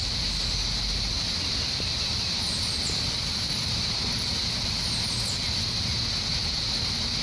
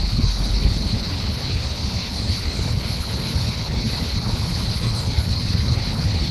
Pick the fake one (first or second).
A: second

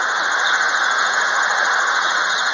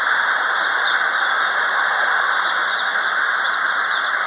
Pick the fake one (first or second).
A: first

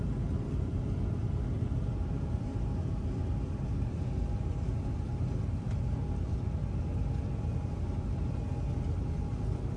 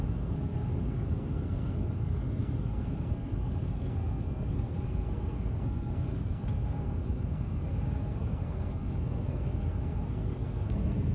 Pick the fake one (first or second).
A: second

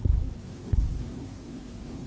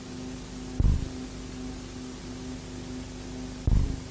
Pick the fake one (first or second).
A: first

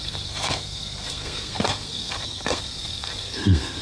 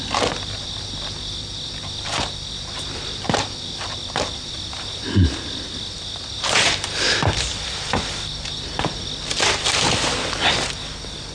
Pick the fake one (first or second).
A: first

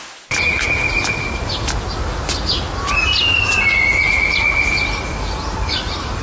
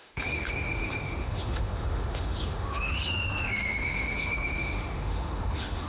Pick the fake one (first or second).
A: second